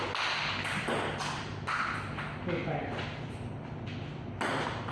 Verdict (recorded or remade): recorded